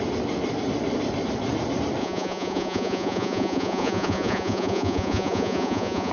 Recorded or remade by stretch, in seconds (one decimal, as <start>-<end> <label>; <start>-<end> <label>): 0.0-2.0 recorded; 2.0-6.1 remade